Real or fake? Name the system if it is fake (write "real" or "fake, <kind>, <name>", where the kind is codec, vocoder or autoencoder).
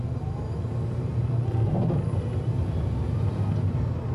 real